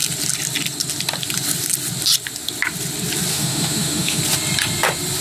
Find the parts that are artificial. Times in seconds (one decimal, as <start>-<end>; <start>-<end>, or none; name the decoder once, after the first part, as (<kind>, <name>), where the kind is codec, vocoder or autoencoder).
3.3-4.2 (autoencoder, DAC-VAE)